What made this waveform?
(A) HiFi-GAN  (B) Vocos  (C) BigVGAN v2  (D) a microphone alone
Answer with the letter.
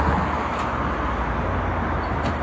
D